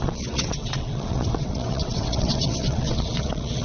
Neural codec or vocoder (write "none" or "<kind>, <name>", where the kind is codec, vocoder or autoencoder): vocoder, WaveNeXt